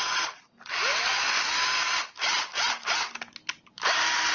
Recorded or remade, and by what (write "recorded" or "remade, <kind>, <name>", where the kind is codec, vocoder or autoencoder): recorded